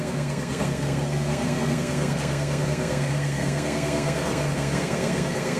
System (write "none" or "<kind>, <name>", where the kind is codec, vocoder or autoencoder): codec, SNAC